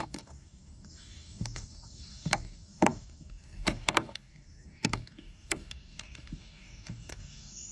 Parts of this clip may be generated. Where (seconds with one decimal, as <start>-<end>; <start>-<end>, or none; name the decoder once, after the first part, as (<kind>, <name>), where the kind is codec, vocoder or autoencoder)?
0.0-7.7 (codec, DAC)